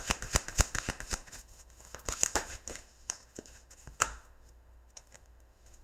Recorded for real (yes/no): no